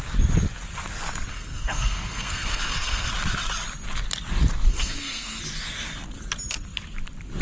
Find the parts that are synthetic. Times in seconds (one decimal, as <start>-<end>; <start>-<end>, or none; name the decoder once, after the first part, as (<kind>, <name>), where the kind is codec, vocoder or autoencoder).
1.3-3.1 (codec, SNAC); 4.7-5.4